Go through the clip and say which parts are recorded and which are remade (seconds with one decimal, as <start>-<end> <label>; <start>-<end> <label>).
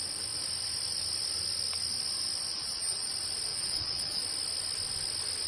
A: 0.0-2.5 recorded; 2.5-3.1 remade; 3.1-3.5 recorded; 3.5-4.2 remade; 4.2-5.5 recorded